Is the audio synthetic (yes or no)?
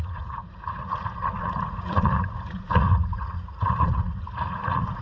yes